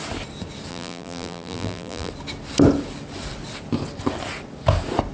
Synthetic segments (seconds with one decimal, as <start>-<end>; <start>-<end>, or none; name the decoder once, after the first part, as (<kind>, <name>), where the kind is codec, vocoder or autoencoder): 0.7-2.1 (vocoder, BigVGAN v2)